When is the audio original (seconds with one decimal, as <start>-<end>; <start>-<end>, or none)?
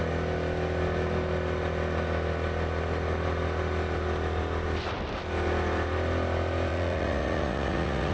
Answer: 0.0-6.7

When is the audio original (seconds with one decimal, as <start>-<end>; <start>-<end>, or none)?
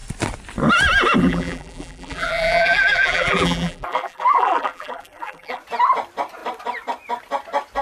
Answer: 0.0-1.2; 5.6-7.8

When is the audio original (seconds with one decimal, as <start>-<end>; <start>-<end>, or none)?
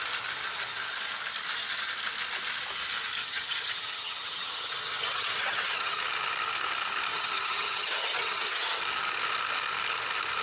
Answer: 0.0-3.2; 6.0-7.1; 8.8-10.4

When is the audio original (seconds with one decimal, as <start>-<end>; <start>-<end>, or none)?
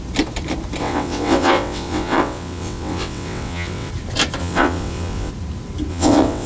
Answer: 0.0-0.8; 3.9-4.4; 5.3-5.9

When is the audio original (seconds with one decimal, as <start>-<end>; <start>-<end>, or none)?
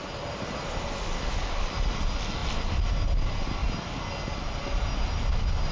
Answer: 0.0-5.7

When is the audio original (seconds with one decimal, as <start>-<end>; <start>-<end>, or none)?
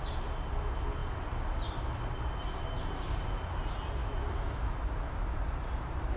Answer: 0.0-4.0; 4.9-6.2